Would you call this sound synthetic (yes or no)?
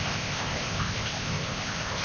yes